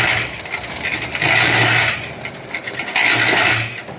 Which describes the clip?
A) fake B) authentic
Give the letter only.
B